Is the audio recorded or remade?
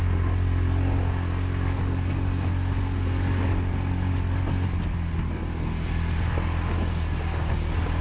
recorded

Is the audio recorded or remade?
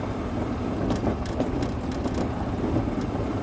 recorded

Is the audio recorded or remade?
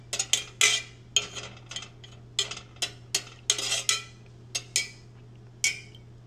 recorded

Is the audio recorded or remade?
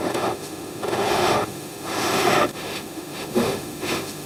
remade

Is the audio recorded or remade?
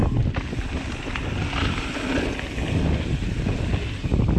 recorded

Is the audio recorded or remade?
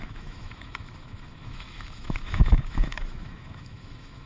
remade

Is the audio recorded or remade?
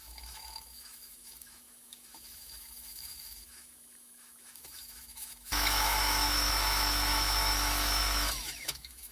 remade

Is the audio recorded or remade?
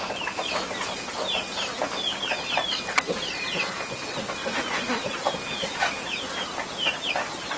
recorded